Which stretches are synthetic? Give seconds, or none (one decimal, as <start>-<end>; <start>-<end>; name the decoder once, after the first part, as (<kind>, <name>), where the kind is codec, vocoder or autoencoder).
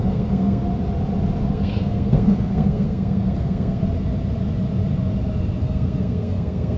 0.0-0.6 (codec, SNAC); 1.5-3.8; 5.6-6.8